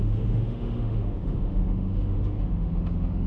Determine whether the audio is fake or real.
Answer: fake